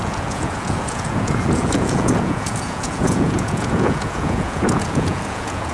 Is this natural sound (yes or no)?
no